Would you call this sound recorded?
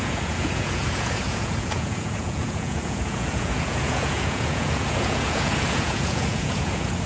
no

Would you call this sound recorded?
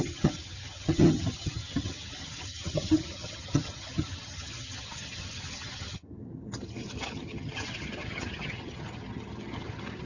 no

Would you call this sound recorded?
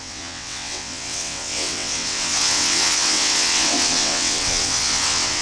no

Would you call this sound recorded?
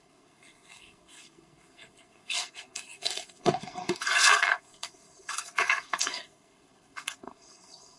no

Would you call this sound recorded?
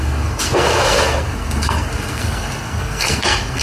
no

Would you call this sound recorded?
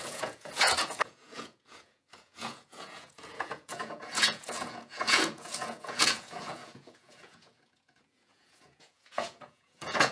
no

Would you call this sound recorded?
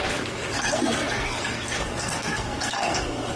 no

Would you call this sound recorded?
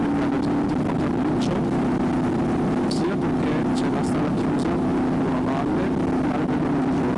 yes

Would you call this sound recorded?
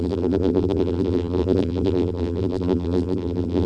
no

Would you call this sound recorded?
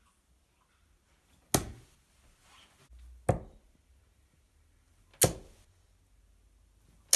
yes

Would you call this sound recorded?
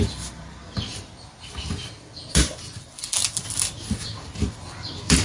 yes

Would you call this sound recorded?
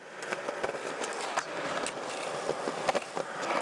yes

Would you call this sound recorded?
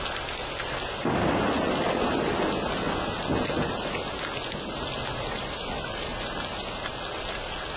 yes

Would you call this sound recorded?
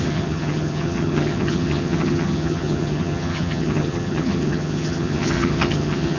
no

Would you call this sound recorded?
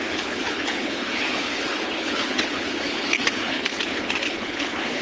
no